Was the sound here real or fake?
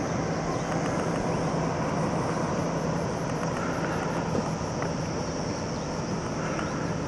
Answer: real